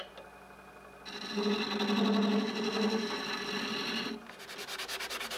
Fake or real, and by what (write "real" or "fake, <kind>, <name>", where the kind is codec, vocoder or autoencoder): real